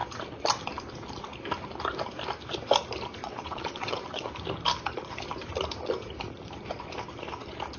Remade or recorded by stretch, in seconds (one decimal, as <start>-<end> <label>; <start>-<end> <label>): 0.0-3.2 recorded; 3.2-4.3 remade; 4.3-7.8 recorded